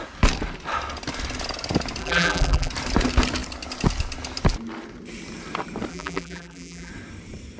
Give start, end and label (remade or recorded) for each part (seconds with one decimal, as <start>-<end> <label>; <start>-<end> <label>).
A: 0.0-2.0 recorded; 2.0-2.7 remade; 2.7-5.9 recorded; 5.9-6.9 remade; 6.9-7.6 recorded